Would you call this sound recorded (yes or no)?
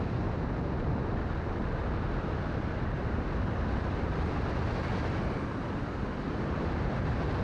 yes